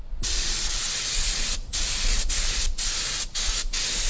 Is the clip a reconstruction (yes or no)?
no